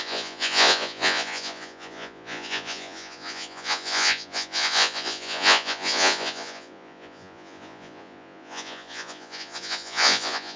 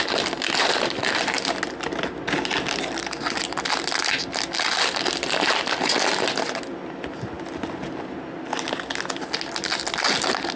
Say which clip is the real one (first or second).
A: second